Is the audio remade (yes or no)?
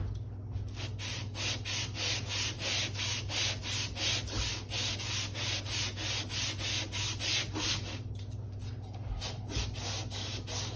no